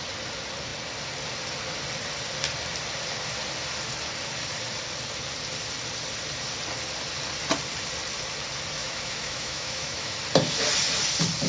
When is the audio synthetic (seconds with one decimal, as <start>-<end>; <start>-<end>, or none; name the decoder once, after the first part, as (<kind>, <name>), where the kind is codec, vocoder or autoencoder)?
8.8-10.2 (autoencoder, DAC-VAE)